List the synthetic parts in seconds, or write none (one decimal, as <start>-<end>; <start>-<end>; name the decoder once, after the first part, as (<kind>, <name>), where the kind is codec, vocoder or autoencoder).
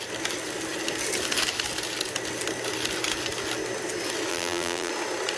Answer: 4.3-4.9 (vocoder, BigVGAN v2)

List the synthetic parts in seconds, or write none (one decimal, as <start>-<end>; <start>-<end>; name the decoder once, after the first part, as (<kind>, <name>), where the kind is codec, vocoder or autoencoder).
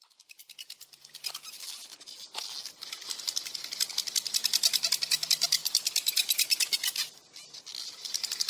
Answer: none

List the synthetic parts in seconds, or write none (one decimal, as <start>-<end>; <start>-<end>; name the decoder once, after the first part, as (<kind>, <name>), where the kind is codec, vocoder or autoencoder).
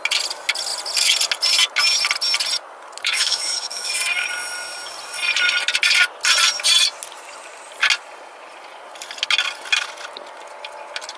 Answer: 3.0-3.9 (autoencoder, DAC-VAE)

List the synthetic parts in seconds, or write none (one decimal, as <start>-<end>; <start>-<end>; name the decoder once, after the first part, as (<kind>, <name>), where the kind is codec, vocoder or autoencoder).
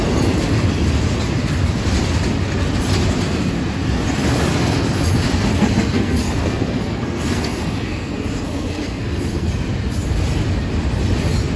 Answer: 5.5-9.5 (codec, SNAC)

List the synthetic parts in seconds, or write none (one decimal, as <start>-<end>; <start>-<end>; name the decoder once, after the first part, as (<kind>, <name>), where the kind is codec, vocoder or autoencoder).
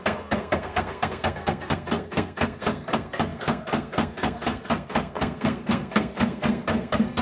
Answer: 0.0-7.2 (codec, SNAC)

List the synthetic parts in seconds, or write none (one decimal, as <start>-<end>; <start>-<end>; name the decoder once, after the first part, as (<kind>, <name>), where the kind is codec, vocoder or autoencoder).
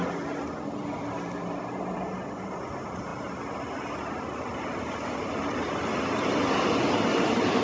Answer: none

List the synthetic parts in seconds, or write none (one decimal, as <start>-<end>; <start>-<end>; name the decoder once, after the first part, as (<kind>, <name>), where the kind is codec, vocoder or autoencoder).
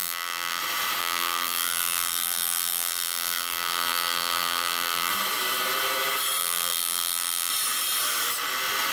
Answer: 0.0-0.6 (vocoder, BigVGAN v2); 1.0-5.1; 6.4-7.5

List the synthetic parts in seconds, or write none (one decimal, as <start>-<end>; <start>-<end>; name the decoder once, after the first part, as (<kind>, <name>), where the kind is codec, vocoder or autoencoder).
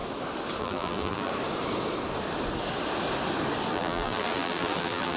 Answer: 0.6-1.3 (vocoder, BigVGAN v2); 3.7-5.2